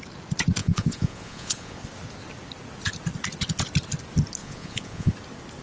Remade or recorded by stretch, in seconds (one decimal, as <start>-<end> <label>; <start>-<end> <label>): 0.0-0.6 recorded; 0.6-1.8 remade; 1.8-4.4 recorded; 4.4-5.1 remade; 5.1-5.6 recorded